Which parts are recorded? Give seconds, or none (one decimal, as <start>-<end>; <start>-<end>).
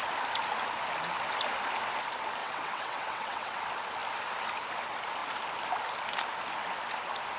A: 0.0-2.4; 3.6-7.4